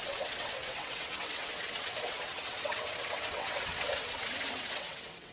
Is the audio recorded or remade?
remade